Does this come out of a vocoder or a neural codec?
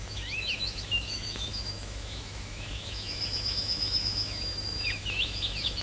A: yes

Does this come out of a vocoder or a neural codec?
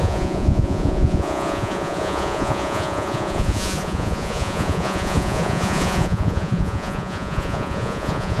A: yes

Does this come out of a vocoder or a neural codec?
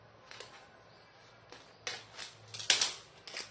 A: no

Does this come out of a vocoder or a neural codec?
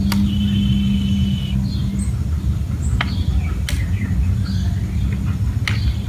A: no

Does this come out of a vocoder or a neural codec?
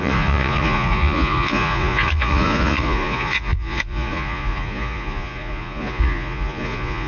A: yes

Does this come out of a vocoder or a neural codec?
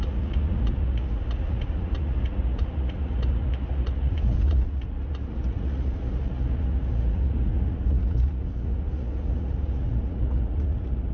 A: yes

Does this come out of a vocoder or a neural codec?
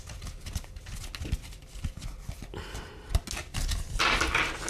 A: no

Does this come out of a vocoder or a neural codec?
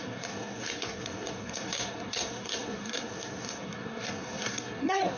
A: yes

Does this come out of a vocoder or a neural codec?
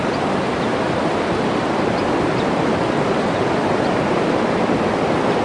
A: no